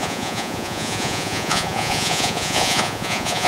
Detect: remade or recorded remade